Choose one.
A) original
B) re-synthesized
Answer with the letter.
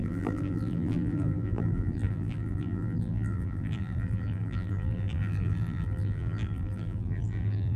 B